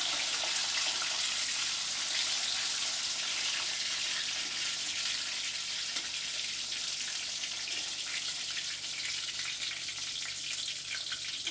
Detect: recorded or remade recorded